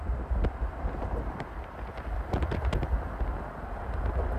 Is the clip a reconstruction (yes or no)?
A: no